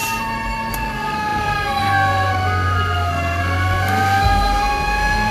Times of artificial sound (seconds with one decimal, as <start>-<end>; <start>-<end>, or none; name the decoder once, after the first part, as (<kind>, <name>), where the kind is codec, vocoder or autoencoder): 0.7-5.3 (codec, SNAC)